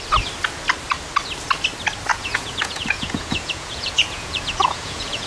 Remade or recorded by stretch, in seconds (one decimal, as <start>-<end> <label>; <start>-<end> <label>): 0.0-2.1 recorded; 2.1-5.3 remade